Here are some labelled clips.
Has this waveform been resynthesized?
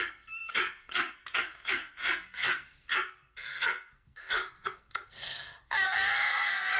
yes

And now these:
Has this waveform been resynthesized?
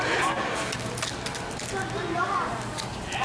no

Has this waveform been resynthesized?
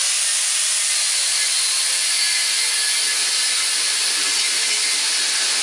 no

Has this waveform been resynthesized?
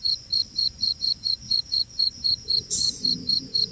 yes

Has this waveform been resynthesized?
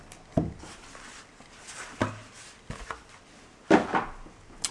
no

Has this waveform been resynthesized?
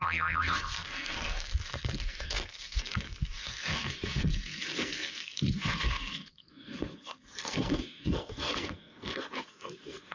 yes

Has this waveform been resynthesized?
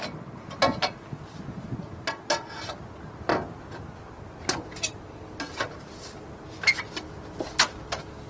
no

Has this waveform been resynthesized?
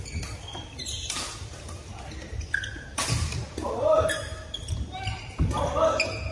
no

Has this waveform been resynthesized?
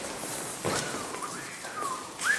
no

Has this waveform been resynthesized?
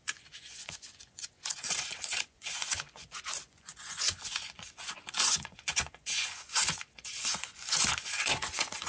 yes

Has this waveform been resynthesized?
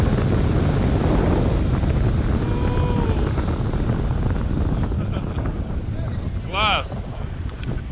no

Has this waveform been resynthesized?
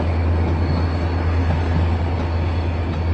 no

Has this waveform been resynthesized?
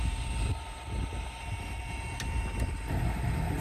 no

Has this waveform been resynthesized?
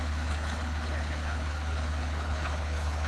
yes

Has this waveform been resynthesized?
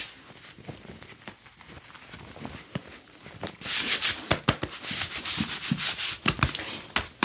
no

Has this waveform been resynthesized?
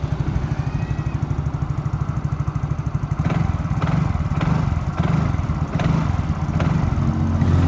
no